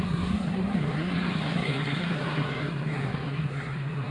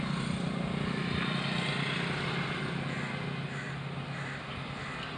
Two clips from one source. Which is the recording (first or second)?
second